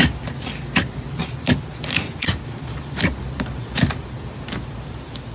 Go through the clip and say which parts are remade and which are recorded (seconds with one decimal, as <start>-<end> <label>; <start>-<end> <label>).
0.0-5.3 recorded